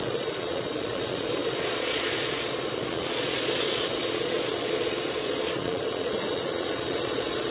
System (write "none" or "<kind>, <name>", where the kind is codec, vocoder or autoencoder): vocoder, Vocos